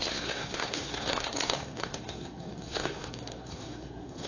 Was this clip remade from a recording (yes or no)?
yes